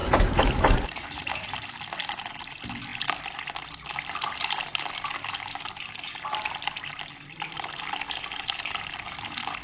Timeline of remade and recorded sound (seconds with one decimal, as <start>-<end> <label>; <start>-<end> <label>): 0.0-1.3 remade; 1.3-9.6 recorded